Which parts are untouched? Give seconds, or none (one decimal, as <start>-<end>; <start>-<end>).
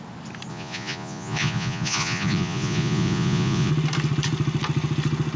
0.0-0.5; 3.7-5.4